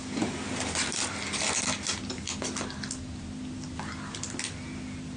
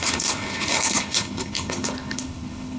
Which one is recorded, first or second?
first